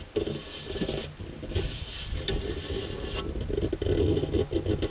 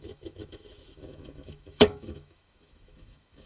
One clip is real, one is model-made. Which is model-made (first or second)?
second